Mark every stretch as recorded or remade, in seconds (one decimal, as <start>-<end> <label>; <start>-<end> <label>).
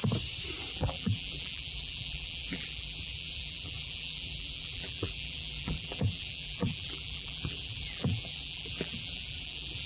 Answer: 0.0-0.7 recorded; 0.7-9.9 remade